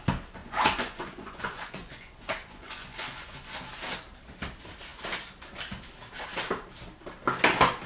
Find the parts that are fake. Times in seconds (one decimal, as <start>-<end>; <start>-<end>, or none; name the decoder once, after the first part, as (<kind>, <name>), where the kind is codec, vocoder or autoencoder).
0.4-3.6 (vocoder, Vocos)

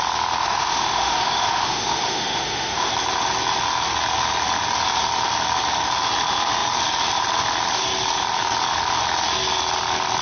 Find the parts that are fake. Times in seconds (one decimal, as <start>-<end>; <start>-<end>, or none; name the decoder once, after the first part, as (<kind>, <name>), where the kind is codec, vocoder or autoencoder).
0.4-2.9 (autoencoder, DAC-VAE)

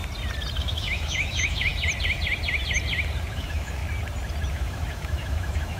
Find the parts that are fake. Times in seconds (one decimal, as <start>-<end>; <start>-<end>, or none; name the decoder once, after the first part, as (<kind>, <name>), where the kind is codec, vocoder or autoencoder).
0.6-1.7 (autoencoder, DAC-VAE); 3.3-3.8; 4.5-5.8

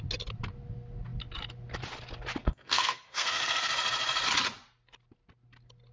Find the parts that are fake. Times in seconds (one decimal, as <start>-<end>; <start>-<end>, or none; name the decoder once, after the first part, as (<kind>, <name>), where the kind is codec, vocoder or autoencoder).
2.4-3.7 (codec, SNAC)

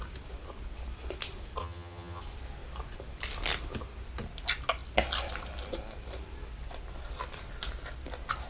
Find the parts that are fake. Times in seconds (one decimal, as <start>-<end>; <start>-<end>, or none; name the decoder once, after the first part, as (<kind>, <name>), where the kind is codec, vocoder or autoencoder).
1.6-2.2 (vocoder, HiFi-GAN)

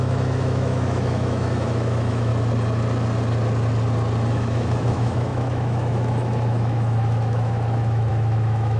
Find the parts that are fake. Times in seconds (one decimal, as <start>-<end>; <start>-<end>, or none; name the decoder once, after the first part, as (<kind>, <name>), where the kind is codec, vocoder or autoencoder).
0.0-2.3 (autoencoder, DAC-VAE); 4.3-8.8

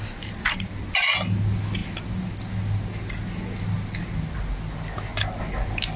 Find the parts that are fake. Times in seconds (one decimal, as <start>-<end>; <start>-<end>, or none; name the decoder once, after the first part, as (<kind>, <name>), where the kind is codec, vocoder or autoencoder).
none

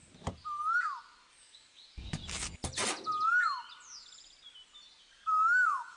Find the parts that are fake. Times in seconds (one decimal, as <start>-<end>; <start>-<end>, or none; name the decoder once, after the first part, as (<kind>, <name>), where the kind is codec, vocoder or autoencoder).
1.3-2.2 (codec, DAC); 5.0-6.0